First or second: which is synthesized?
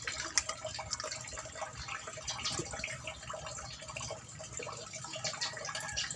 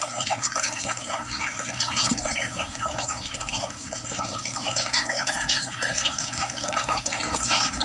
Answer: second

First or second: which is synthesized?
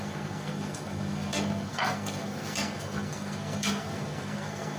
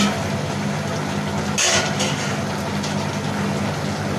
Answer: first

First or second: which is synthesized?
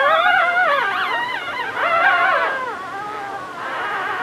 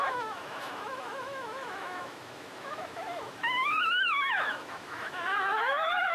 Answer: second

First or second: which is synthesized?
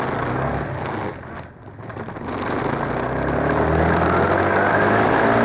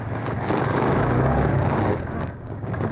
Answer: second